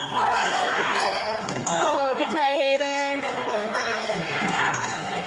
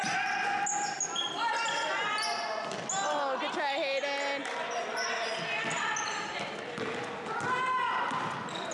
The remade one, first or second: first